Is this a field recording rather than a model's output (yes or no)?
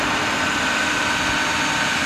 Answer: yes